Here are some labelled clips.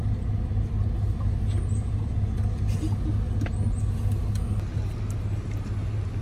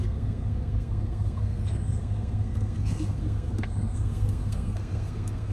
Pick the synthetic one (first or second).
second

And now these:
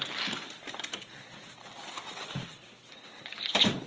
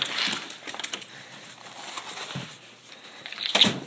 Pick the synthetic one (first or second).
first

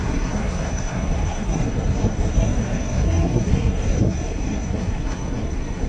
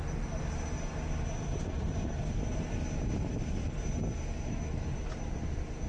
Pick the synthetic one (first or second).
first